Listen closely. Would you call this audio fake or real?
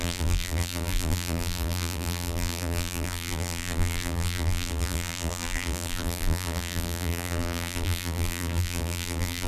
fake